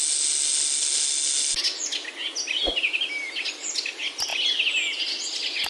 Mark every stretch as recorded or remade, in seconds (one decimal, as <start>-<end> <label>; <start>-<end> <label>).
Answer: 0.0-5.7 recorded